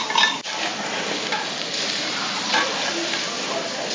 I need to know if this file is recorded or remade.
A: recorded